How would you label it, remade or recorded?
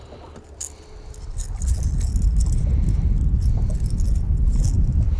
recorded